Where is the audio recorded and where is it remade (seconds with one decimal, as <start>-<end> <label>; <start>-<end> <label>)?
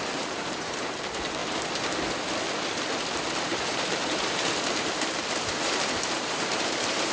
0.0-1.4 remade; 1.4-3.4 recorded; 3.4-7.1 remade